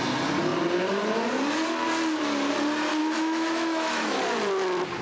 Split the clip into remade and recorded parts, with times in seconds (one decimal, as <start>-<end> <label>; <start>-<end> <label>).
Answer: 0.0-3.0 recorded; 3.0-4.2 remade; 4.2-5.0 recorded